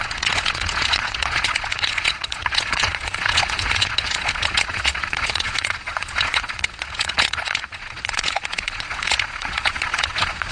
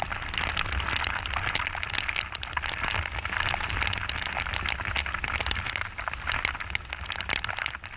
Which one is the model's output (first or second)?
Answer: first